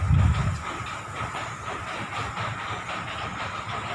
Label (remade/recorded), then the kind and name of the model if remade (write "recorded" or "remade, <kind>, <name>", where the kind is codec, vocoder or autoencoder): recorded